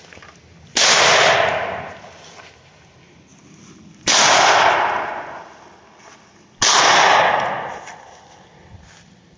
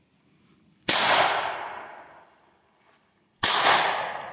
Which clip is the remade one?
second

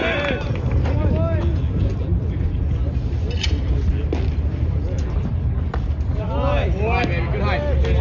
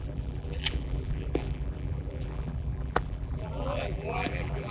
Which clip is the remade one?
second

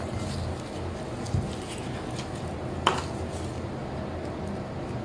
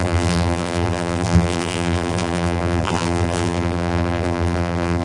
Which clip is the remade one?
second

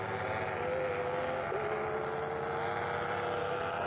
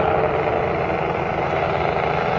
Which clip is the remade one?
second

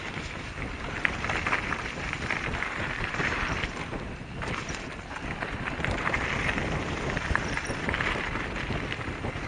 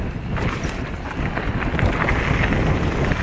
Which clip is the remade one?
first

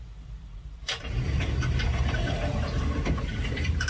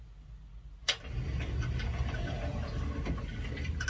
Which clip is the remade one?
first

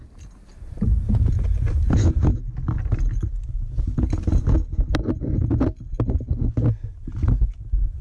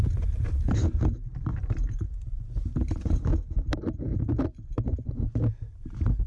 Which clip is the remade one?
second